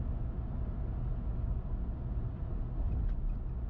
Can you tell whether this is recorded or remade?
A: recorded